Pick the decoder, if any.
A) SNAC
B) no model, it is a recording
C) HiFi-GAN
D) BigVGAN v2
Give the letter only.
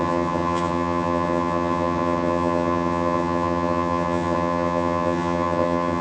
C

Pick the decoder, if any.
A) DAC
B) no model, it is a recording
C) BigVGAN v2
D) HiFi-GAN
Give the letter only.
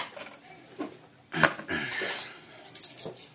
B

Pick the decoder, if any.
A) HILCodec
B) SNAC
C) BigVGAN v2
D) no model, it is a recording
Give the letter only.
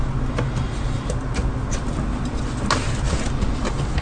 D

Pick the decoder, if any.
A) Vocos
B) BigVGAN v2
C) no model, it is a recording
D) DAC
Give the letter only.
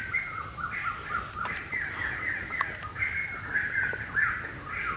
C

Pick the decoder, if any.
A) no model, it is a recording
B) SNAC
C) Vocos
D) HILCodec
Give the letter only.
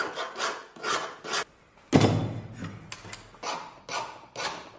A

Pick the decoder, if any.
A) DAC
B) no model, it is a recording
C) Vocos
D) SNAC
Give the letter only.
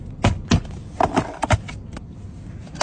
B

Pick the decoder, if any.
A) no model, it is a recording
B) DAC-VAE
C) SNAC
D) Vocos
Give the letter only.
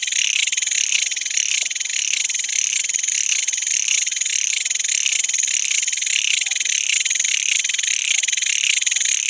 A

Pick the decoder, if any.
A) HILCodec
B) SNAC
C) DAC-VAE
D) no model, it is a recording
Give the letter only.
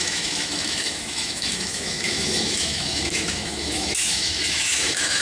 C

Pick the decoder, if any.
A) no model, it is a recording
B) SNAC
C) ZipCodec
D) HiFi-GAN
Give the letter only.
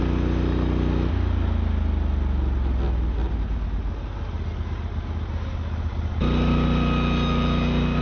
A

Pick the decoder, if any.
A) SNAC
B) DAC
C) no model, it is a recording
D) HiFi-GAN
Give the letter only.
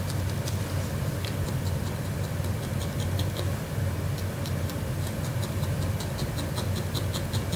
C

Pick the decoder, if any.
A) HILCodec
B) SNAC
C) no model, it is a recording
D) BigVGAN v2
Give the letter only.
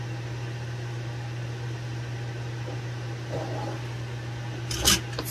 C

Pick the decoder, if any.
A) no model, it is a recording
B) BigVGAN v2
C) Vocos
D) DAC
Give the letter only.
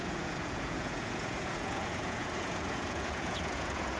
C